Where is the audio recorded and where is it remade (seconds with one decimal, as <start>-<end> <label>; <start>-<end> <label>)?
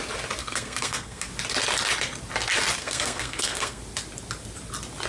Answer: 0.0-0.4 recorded; 0.4-1.3 remade; 1.3-2.8 recorded; 2.8-3.8 remade; 3.8-5.1 recorded